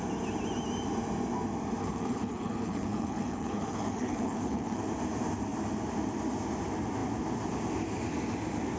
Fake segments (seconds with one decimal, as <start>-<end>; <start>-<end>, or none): 1.8-4.8